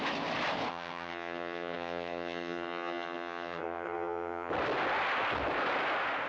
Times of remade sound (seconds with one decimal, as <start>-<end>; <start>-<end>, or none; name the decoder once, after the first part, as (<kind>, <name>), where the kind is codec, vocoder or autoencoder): 0.7-4.5 (vocoder, HiFi-GAN)